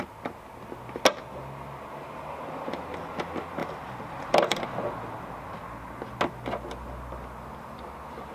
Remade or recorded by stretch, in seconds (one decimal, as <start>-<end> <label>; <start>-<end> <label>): 0.0-3.6 recorded; 3.6-4.6 remade; 4.6-8.3 recorded

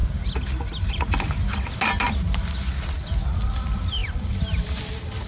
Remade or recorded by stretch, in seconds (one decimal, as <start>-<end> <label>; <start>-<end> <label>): 0.0-3.2 recorded; 3.2-5.3 remade

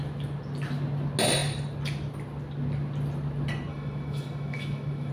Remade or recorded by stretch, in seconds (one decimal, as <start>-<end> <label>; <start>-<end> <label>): 0.0-3.7 recorded; 3.7-5.1 remade

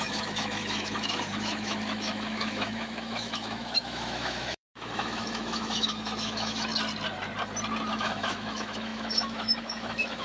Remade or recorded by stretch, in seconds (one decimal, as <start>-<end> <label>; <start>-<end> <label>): 0.0-6.7 remade; 6.7-7.9 recorded; 7.9-10.2 remade

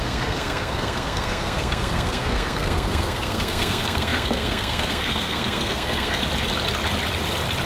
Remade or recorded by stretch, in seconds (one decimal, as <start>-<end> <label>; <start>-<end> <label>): 0.0-6.2 remade; 6.2-7.7 recorded

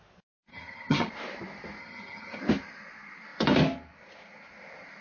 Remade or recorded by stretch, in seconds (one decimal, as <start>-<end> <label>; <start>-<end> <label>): 0.0-0.5 recorded; 0.5-1.1 remade; 1.1-1.8 recorded; 1.8-2.4 remade; 2.4-5.0 recorded